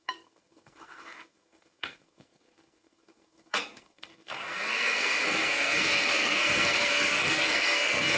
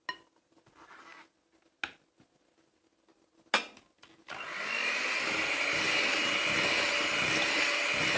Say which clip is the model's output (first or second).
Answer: first